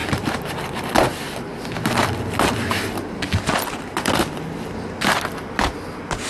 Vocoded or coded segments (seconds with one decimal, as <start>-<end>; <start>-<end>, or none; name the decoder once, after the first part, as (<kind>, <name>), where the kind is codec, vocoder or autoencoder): none